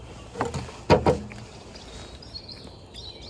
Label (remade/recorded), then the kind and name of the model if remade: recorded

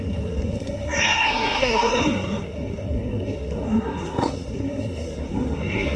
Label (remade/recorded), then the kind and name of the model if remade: remade, codec, SNAC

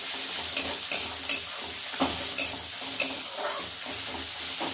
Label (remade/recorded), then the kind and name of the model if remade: recorded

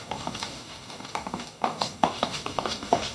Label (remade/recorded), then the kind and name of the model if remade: remade, codec, DAC